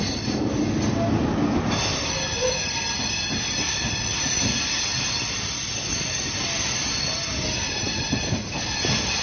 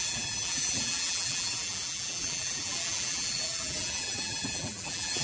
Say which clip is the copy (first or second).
second